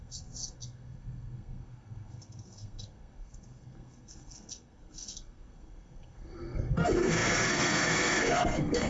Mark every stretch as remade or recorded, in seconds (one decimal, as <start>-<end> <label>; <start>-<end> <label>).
0.0-8.9 remade